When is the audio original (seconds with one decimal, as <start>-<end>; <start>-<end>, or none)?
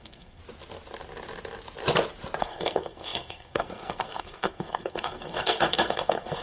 0.4-2.4